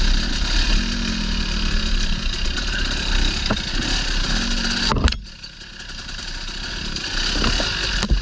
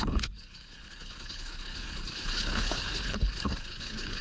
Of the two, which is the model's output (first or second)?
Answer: second